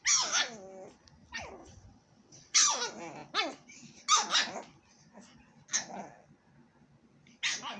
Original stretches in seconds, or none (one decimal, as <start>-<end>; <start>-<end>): 0.0-1.6; 2.7-7.8